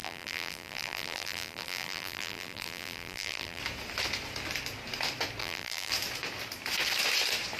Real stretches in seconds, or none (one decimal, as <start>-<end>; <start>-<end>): 3.6-5.4; 5.9-7.6